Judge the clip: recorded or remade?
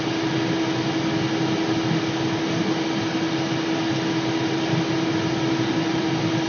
recorded